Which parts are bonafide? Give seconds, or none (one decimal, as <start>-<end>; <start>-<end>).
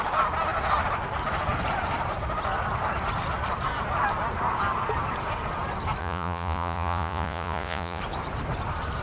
0.0-6.0; 8.0-9.0